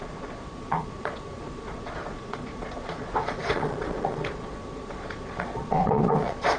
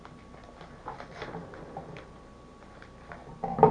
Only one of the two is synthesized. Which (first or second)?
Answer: first